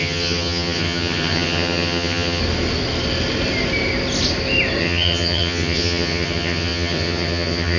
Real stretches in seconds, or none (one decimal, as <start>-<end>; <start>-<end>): 2.4-4.8